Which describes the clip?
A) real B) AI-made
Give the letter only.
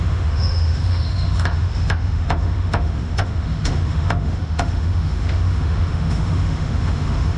B